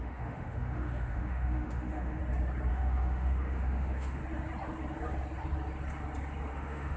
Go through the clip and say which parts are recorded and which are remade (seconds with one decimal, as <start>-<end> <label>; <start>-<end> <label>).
0.0-2.2 remade; 2.2-2.7 recorded; 2.7-4.2 remade; 4.2-6.5 recorded; 6.5-7.0 remade